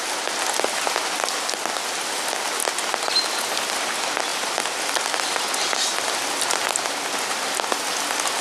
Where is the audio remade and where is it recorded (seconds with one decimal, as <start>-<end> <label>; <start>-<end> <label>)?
0.0-8.4 recorded